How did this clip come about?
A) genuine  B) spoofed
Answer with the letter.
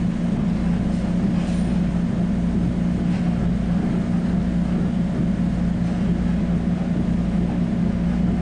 A